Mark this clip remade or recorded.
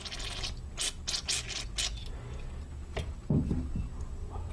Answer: recorded